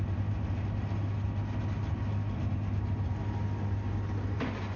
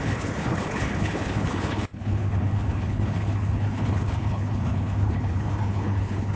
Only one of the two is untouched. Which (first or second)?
first